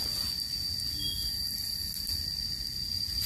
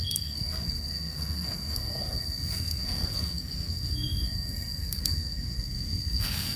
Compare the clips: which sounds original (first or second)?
first